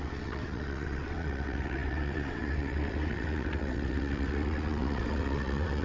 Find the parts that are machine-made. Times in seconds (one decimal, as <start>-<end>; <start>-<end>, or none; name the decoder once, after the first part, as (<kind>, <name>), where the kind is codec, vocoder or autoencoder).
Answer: 0.0-5.8 (vocoder, WaveNeXt)